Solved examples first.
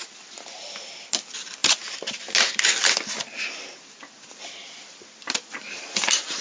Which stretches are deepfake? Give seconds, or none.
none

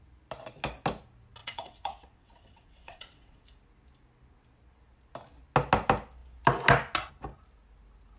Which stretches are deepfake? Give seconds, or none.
1.4-3.4 (vocoder, WaveNeXt)

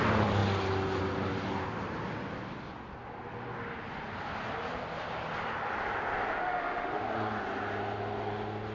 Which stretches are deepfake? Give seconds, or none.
6.4-7.0 (autoencoder, DAC-VAE)

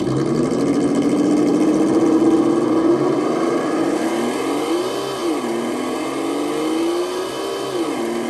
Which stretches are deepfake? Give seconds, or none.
none

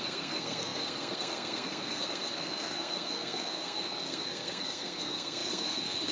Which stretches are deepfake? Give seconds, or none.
0.0-6.1 (codec, SNAC)

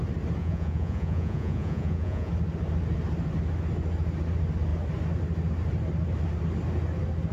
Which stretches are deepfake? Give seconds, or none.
0.4-2.3 (vocoder, Vocos)